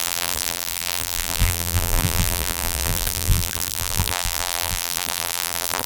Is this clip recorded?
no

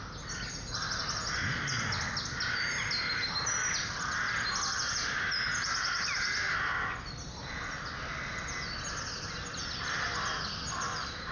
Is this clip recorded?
yes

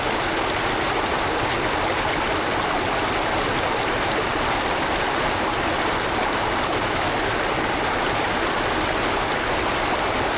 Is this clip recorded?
yes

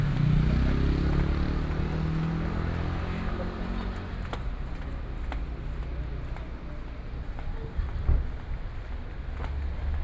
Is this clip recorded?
yes